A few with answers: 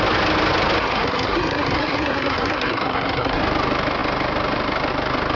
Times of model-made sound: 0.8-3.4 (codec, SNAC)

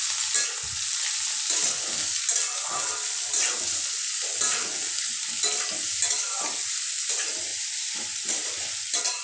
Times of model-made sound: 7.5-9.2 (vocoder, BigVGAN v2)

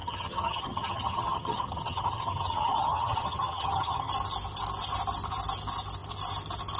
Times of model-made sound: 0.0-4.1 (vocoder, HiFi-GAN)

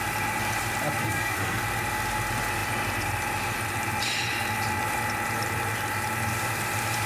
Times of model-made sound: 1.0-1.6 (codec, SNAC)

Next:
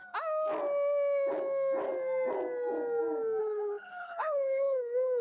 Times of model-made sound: 3.4-5.2 (codec, HILCodec)

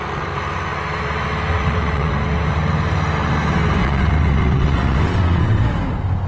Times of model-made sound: 1.5-2.1 (vocoder, WaveNeXt); 3.8-5.6

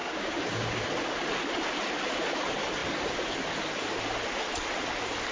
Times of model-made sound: 0.0-0.9 (codec, DAC)